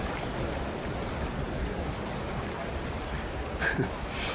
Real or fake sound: real